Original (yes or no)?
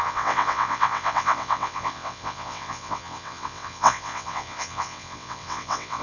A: no